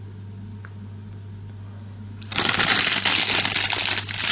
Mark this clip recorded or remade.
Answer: recorded